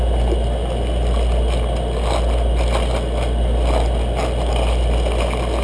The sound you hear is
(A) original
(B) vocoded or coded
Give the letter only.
A